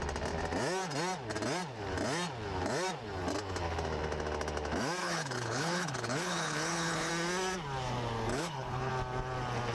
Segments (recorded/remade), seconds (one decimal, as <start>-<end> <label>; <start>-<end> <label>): 0.0-5.0 recorded; 5.0-7.1 remade; 7.1-8.3 recorded; 8.3-8.9 remade; 8.9-9.7 recorded